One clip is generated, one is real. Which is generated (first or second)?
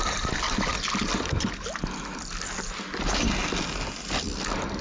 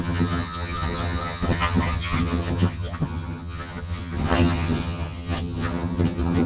second